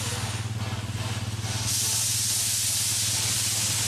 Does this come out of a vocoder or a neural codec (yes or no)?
no